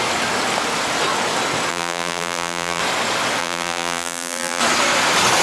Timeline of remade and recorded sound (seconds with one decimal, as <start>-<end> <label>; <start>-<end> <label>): 0.0-1.7 recorded; 1.7-2.8 remade; 2.8-3.4 recorded; 3.4-4.6 remade; 4.6-5.4 recorded